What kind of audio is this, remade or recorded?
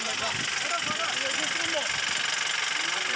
recorded